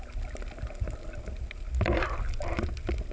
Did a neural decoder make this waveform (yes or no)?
no